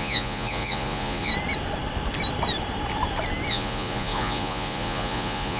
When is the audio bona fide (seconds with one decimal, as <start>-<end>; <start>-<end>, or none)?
1.3-3.5